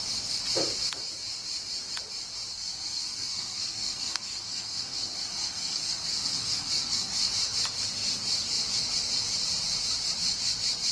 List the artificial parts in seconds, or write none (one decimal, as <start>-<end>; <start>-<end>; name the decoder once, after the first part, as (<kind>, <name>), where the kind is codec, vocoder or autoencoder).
2.5-7.3 (codec, SNAC)